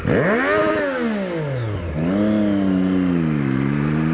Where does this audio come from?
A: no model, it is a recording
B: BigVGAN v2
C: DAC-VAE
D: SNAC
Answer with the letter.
A